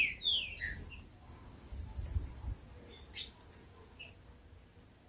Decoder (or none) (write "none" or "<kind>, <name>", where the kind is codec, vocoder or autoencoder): none